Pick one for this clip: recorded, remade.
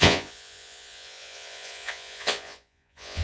remade